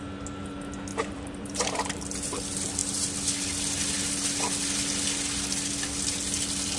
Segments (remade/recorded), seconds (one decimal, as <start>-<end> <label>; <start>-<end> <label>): 0.0-0.9 recorded; 0.9-2.0 remade; 2.0-6.8 recorded